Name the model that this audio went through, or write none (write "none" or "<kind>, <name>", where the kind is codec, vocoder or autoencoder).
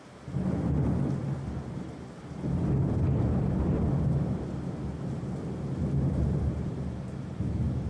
none